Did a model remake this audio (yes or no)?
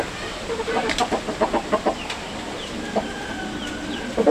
no